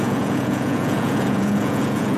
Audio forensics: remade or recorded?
remade